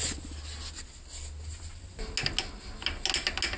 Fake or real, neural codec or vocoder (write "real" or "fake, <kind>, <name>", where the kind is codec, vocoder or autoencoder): real